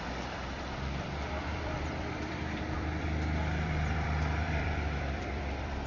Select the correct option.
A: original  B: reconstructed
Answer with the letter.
B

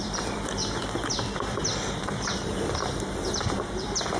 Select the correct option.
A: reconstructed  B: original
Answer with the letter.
A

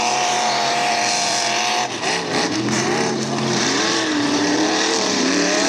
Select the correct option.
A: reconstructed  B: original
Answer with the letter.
A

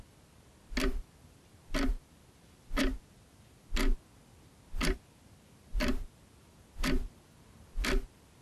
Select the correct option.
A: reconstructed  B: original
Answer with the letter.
B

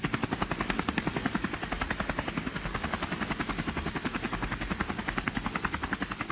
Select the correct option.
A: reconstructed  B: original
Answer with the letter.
B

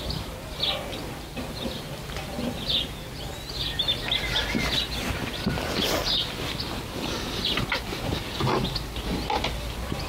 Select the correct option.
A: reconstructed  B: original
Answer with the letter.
B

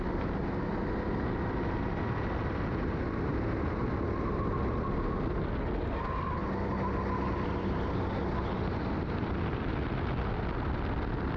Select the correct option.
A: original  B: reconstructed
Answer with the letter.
A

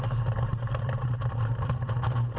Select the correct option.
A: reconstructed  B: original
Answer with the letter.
B